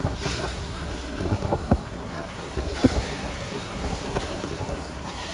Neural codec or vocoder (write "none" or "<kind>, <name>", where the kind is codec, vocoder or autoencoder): codec, SNAC